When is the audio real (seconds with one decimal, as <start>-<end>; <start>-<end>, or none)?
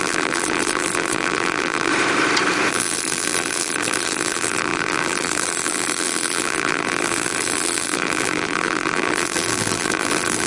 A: 1.9-2.7